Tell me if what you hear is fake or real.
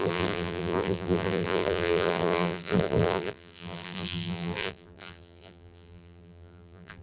fake